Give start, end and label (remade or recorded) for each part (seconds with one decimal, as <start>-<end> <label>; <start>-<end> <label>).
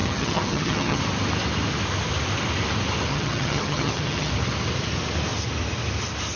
0.0-1.0 remade; 1.0-3.1 recorded; 3.1-4.3 remade; 4.3-6.4 recorded